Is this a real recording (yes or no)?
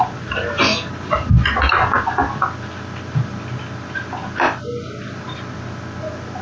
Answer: yes